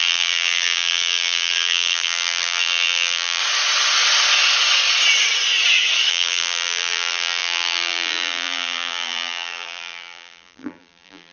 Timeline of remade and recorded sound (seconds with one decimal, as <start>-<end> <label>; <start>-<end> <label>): 0.0-3.4 remade; 3.4-6.1 recorded; 6.1-11.3 remade